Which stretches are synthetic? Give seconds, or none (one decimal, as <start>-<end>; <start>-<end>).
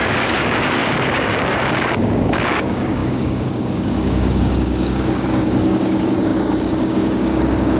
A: 0.0-7.8